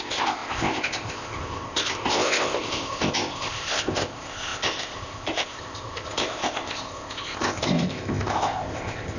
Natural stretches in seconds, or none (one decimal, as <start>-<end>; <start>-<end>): none